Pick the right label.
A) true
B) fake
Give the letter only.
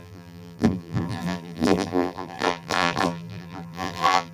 B